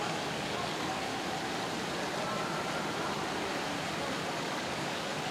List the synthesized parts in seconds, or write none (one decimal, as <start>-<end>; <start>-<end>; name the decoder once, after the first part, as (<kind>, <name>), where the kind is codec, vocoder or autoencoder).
0.0-1.1 (codec, DAC); 4.3-5.3